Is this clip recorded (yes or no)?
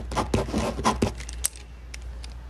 yes